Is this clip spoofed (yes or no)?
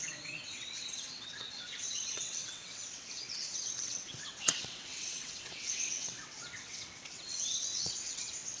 yes